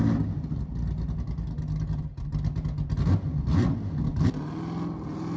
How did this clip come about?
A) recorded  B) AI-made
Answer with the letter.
A